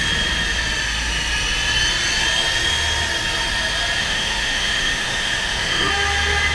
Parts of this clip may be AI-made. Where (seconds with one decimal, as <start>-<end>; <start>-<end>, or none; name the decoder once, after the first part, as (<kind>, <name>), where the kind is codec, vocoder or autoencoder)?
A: 4.0-5.9 (autoencoder, DAC-VAE)